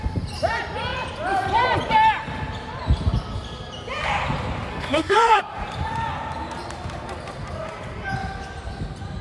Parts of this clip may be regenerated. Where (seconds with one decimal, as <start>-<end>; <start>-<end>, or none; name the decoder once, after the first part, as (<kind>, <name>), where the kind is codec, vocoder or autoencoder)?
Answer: 4.7-5.4 (codec, SNAC)